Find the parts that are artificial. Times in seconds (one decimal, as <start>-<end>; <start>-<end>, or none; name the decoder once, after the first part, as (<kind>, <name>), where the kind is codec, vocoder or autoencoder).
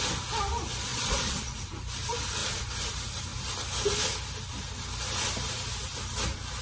0.9-1.6 (vocoder, Vocos)